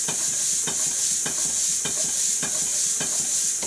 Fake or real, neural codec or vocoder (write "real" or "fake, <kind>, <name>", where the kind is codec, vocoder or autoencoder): real